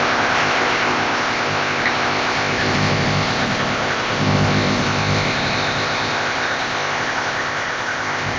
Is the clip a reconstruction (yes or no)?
yes